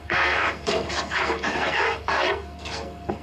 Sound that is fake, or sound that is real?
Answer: fake